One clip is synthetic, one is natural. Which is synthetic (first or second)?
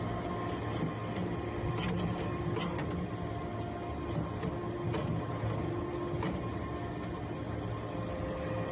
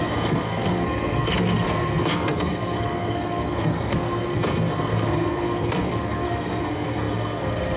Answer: second